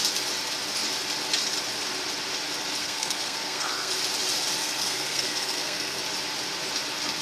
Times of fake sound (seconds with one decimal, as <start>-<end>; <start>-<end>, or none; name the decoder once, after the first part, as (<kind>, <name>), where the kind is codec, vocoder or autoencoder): 2.8-3.9 (codec, SNAC); 4.6-6.0